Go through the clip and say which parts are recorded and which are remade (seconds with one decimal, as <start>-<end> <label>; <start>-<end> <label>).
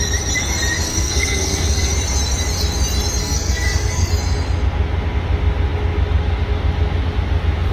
0.0-0.9 recorded; 0.9-1.9 remade; 1.9-3.2 recorded; 3.2-4.1 remade; 4.1-7.7 recorded